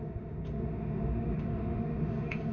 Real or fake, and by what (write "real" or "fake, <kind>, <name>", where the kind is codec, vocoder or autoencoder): fake, autoencoder, DAC-VAE